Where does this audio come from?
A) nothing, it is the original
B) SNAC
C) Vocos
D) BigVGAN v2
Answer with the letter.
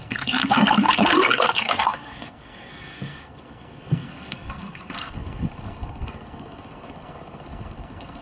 B